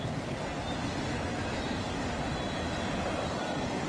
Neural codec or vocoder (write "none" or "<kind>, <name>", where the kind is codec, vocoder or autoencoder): none